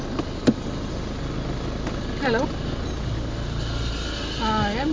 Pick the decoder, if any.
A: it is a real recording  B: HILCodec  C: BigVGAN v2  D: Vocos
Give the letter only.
A